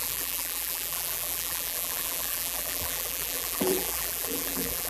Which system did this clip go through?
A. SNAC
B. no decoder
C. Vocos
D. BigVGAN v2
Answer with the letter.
D